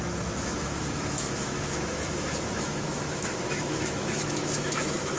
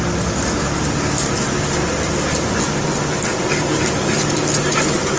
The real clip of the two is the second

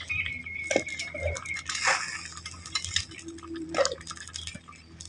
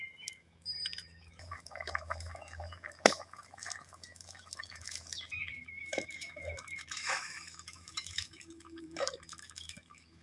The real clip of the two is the first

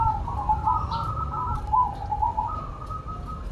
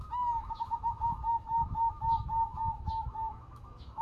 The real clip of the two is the first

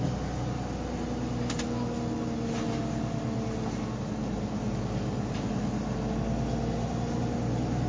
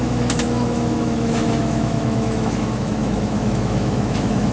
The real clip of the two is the first